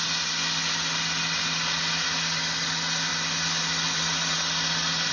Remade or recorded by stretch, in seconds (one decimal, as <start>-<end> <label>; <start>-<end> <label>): 0.0-5.1 recorded